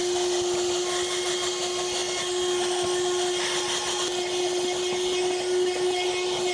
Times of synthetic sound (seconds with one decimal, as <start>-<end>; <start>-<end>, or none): none